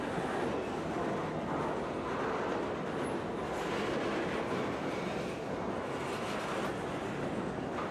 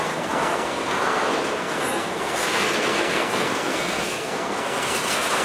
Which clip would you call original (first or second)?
first